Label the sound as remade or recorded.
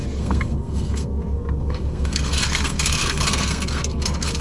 remade